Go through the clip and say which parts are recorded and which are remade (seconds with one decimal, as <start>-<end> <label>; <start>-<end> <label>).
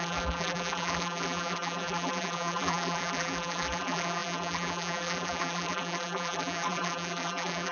0.0-7.7 remade